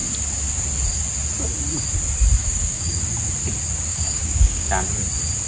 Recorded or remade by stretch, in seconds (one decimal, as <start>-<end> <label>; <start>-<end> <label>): 0.0-2.4 recorded; 2.4-3.0 remade; 3.0-3.9 recorded; 3.9-4.7 remade; 4.7-5.5 recorded